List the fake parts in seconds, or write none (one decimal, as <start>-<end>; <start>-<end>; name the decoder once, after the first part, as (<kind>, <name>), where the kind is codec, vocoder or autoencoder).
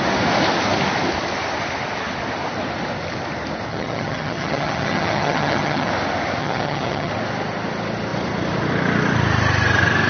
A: 3.7-5.9 (vocoder, HiFi-GAN); 6.4-7.1